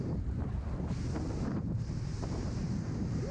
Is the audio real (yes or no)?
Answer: no